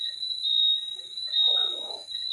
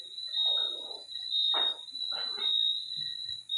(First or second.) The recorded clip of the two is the second